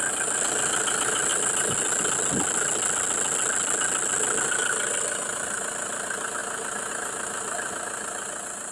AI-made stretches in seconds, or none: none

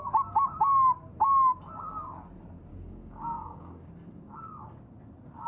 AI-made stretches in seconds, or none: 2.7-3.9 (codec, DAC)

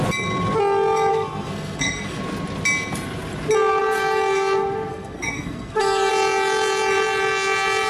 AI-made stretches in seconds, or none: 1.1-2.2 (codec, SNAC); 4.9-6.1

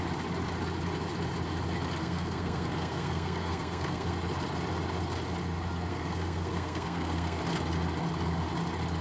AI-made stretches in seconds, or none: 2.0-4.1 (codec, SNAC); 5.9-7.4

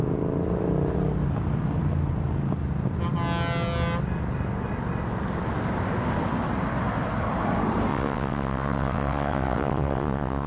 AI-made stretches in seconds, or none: 7.9-10.5 (vocoder, WaveNeXt)

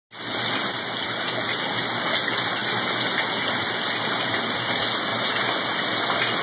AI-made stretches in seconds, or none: none

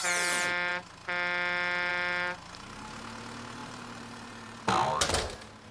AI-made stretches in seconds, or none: 3.6-4.6 (vocoder, BigVGAN v2)